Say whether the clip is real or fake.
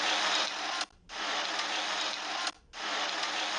real